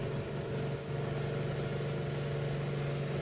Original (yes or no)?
yes